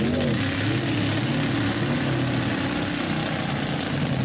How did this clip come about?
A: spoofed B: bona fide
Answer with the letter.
B